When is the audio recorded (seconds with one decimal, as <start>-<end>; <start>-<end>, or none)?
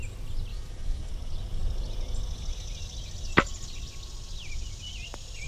0.0-0.5; 1.1-5.5